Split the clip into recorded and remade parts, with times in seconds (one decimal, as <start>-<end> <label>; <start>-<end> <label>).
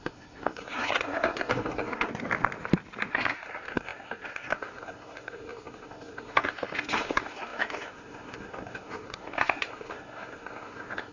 0.0-2.1 remade; 2.1-3.1 recorded; 3.1-11.1 remade